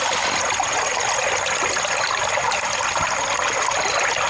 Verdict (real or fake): real